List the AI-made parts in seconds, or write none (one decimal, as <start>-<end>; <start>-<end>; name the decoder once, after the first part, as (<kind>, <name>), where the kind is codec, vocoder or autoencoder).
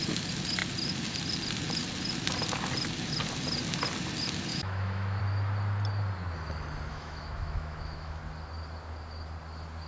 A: 4.5-5.2 (autoencoder, DAC-VAE); 6.9-8.2